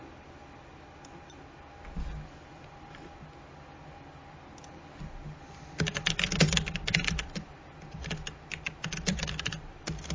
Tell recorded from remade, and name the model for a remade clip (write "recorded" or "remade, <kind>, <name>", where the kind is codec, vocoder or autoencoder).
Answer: recorded